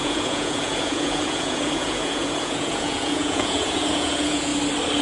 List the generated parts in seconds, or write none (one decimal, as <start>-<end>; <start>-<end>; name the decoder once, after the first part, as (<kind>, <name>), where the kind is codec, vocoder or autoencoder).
0.0-4.5 (vocoder, Vocos)